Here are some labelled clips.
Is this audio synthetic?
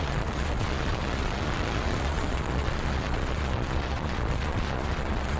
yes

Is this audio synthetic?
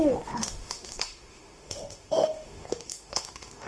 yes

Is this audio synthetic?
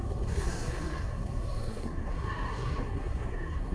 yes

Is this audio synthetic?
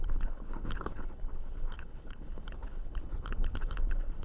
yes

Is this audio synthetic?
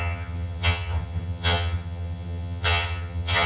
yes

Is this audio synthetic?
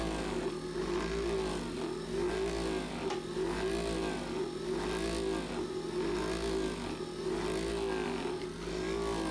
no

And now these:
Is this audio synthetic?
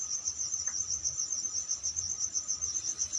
no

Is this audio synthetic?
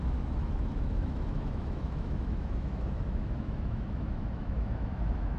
yes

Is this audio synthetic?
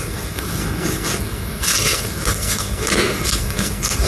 yes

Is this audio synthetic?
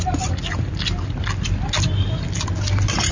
no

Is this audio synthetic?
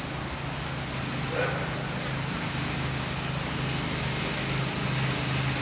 no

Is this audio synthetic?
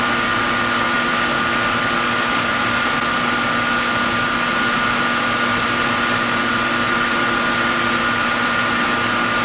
no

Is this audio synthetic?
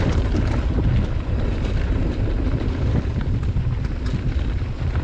yes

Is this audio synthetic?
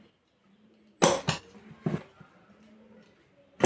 no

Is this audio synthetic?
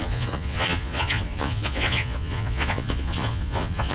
yes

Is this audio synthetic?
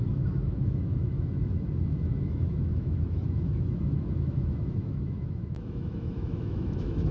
yes